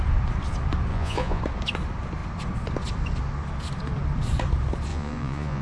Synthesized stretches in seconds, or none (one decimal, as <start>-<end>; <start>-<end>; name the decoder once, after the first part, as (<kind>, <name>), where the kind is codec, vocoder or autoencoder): 0.9-1.4 (vocoder, Vocos); 4.9-5.6